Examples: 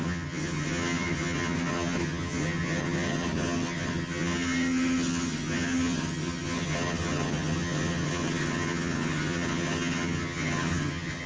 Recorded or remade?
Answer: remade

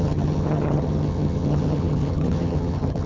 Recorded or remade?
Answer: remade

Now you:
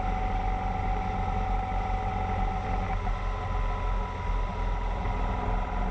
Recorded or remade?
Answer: recorded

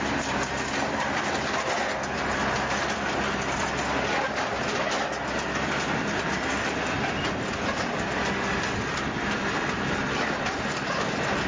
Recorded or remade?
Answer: recorded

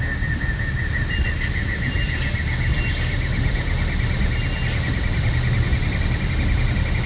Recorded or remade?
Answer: recorded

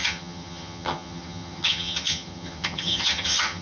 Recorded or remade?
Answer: remade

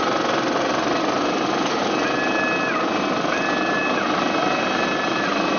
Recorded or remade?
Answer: recorded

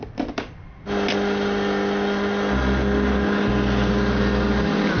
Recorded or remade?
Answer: recorded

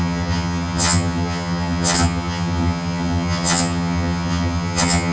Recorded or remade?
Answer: remade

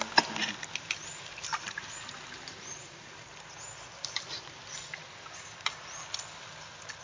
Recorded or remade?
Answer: recorded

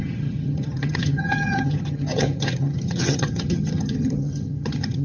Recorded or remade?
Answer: remade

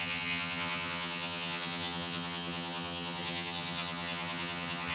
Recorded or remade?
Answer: remade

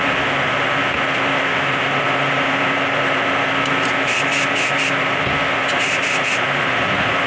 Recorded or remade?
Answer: recorded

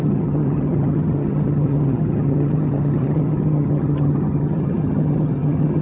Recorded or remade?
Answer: remade